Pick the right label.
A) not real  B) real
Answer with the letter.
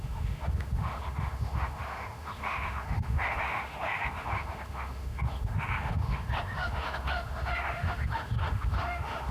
A